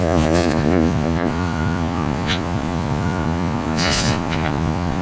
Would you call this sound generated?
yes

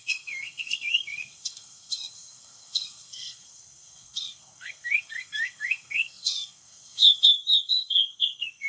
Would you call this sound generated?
yes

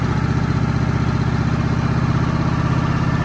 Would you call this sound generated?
no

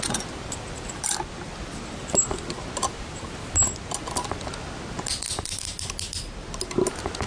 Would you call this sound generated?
no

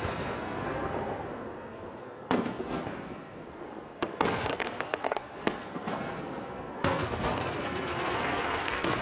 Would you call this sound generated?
yes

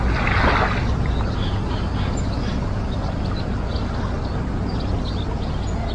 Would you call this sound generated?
no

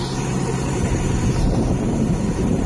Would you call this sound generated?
yes